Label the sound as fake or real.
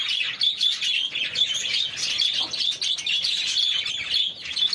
real